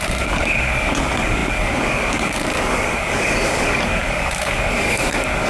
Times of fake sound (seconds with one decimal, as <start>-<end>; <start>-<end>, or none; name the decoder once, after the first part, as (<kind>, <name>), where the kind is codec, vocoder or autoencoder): 0.0-5.5 (codec, DAC)